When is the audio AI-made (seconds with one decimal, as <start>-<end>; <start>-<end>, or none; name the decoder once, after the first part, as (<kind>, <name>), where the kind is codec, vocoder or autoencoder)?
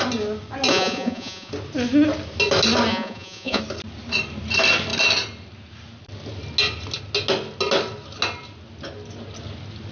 0.7-1.5 (vocoder, Vocos); 2.9-3.6